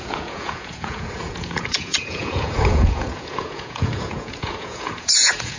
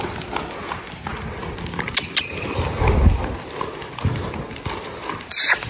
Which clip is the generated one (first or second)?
first